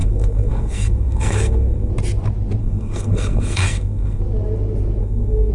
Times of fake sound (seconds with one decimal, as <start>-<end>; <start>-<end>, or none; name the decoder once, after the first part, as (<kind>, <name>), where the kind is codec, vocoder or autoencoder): 0.0-1.9 (codec, SNAC); 2.6-4.2; 5.0-5.5